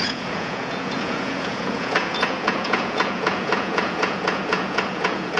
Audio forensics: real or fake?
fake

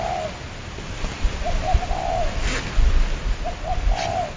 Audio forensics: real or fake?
real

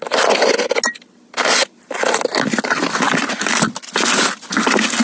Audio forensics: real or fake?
real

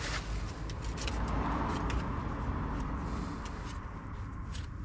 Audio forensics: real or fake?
real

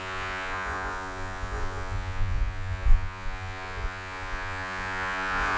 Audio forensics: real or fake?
fake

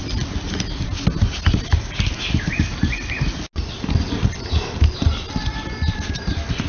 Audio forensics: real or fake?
real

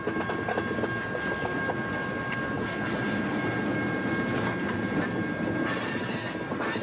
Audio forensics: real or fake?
real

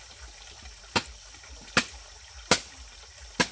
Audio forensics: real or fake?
real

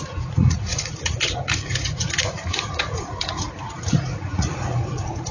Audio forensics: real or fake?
fake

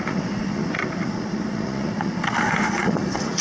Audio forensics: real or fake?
fake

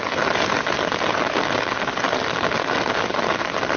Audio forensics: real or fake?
real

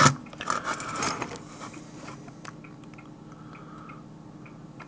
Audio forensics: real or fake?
real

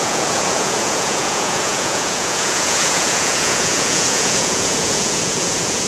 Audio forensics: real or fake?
fake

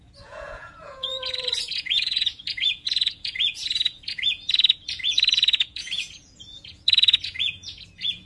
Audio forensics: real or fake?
fake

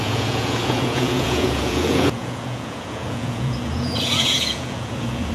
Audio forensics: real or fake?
fake